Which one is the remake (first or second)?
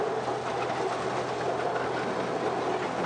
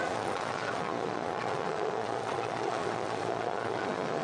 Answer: second